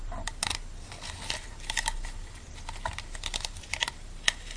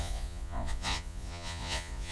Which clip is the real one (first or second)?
first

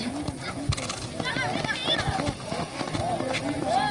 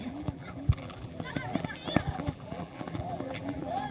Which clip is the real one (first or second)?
first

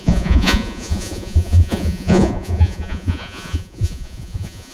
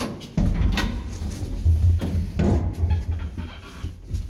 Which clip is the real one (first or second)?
second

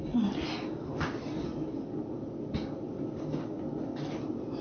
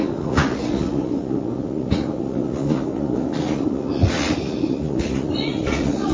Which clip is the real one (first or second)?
first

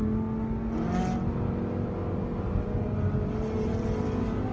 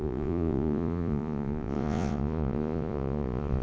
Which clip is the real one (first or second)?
first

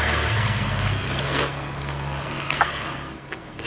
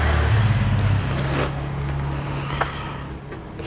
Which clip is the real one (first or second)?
second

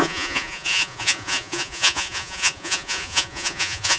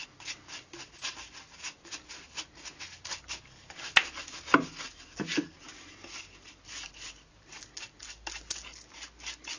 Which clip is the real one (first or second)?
second